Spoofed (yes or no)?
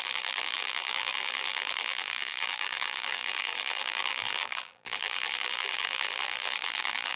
yes